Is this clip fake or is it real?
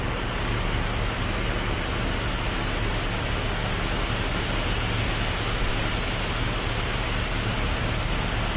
real